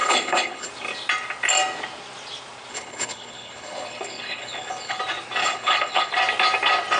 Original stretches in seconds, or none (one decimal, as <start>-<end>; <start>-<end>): 0.7-2.7; 5.0-5.4; 6.1-7.0